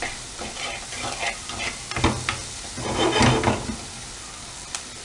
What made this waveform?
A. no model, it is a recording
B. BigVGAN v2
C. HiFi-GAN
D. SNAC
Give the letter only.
A